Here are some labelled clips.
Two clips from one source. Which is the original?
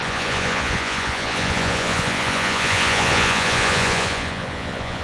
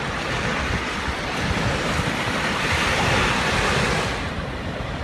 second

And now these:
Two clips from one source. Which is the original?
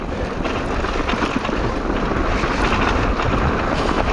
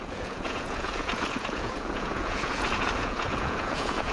first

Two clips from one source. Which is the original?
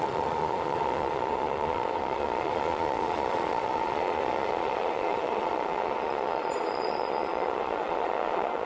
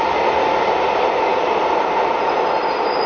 second